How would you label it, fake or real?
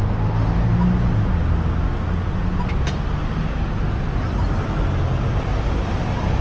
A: real